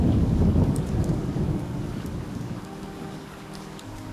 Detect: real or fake fake